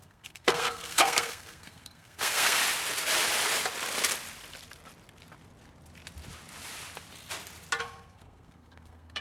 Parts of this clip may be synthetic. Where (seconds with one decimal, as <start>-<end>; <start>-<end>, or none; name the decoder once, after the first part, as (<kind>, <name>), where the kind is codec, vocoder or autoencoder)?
0.0-2.6 (codec, SNAC); 7.8-9.2